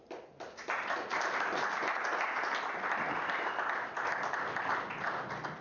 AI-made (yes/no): no